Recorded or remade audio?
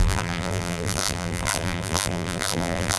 remade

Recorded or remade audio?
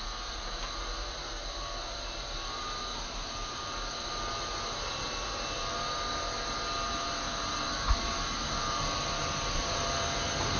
remade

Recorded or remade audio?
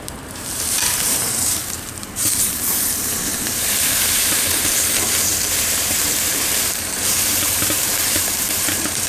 remade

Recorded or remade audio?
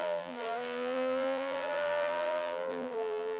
remade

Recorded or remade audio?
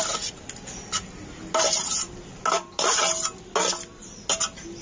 recorded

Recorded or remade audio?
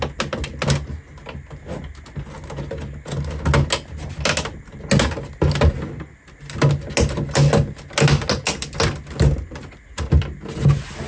recorded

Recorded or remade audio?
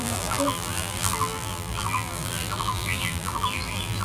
remade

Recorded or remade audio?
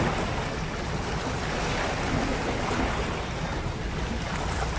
recorded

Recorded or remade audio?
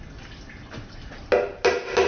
recorded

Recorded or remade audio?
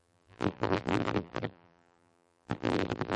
remade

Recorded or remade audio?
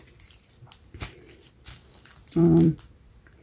remade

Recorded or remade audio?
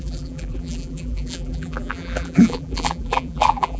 remade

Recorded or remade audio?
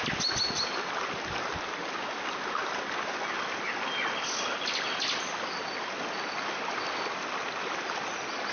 recorded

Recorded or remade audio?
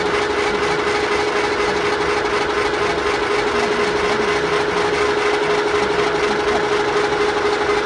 recorded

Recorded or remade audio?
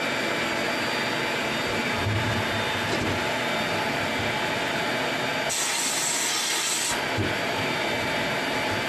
recorded